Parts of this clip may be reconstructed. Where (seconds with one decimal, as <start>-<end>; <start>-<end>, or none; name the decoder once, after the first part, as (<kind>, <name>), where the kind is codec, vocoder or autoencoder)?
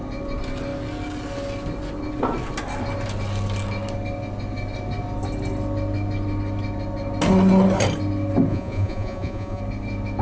8.5-9.6 (vocoder, Vocos)